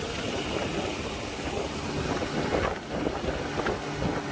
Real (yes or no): yes